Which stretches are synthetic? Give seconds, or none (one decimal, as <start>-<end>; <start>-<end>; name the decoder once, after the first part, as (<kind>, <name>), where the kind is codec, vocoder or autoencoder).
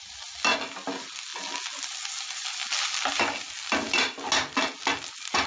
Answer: none